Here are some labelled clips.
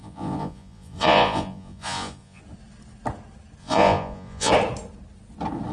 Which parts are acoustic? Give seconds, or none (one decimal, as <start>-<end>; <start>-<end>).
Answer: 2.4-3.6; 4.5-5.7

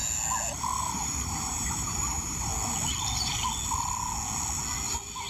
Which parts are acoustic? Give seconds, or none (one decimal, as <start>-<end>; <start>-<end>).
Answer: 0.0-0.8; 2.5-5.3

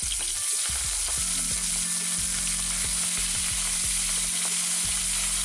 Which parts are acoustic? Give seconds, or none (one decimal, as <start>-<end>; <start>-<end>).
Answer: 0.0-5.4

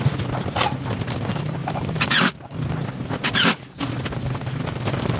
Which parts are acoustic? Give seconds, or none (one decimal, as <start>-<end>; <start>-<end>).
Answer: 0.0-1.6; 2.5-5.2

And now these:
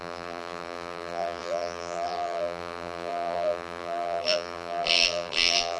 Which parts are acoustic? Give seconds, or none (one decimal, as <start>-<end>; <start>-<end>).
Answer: none

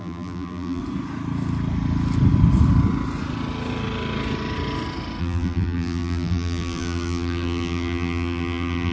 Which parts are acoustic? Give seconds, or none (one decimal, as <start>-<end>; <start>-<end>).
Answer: 0.8-5.2